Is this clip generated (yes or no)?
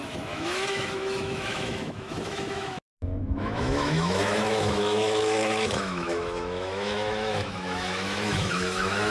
yes